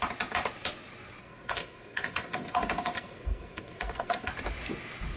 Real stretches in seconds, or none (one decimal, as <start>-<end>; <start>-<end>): 0.0-1.2; 4.3-5.2